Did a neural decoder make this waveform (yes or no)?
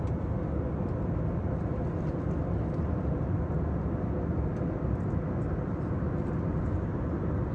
no